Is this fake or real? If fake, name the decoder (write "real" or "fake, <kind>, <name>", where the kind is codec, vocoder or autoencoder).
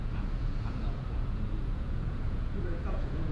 fake, vocoder, Vocos